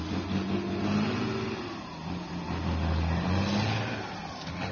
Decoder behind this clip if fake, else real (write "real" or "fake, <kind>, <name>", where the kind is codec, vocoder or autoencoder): real